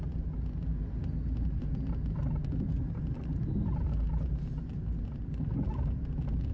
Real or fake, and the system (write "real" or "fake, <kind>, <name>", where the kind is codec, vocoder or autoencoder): real